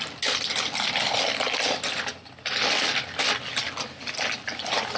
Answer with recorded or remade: recorded